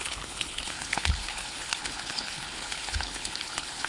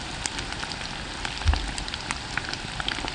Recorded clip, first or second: second